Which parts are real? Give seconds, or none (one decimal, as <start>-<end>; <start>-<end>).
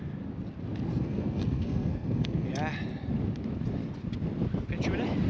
0.0-0.9; 2.5-5.3